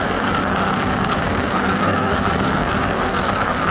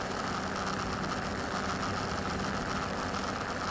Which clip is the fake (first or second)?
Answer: first